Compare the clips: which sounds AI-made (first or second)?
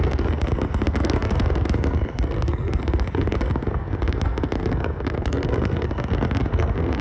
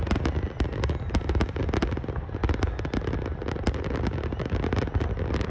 first